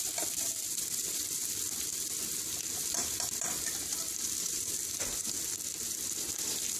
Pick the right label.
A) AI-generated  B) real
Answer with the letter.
A